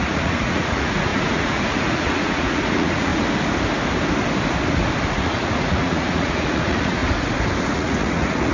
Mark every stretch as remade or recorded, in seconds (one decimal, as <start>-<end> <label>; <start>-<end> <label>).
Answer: 0.0-3.1 remade; 3.1-5.1 recorded; 5.1-7.0 remade; 7.0-7.6 recorded; 7.6-8.5 remade